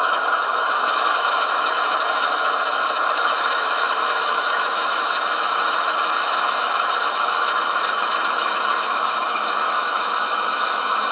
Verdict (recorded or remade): remade